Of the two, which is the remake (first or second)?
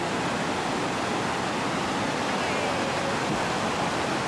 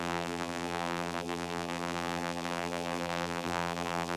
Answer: second